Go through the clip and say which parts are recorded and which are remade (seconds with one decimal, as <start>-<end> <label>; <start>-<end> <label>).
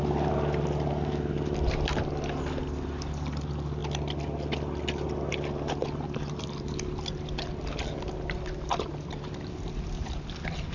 0.0-10.7 recorded